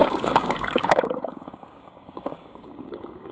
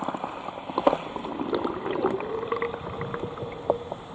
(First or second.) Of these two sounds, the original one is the second